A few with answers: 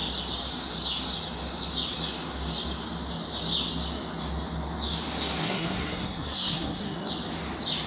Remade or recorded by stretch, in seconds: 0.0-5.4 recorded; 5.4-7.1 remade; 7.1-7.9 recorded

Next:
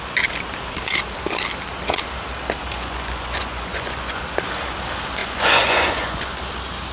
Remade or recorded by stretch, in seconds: 0.0-2.6 recorded; 2.6-4.2 remade; 4.2-5.2 recorded; 5.2-6.4 remade; 6.4-6.9 recorded

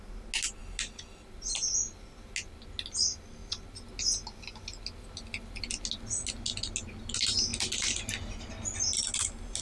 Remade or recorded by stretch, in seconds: 0.0-9.6 recorded

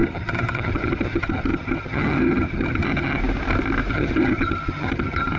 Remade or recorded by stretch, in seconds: 0.0-3.2 remade; 3.2-3.9 recorded; 3.9-5.4 remade

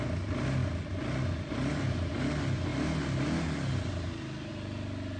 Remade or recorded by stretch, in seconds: 0.0-5.2 recorded

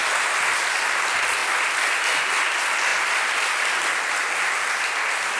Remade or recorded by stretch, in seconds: 0.0-5.4 recorded

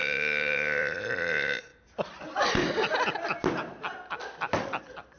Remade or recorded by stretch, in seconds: 0.0-1.7 remade; 1.7-4.8 recorded; 4.8-5.2 remade